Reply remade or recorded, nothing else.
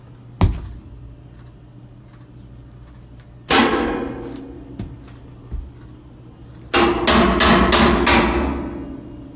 recorded